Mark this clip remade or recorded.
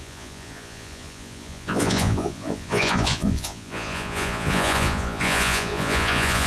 remade